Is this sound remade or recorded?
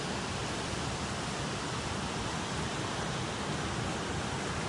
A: recorded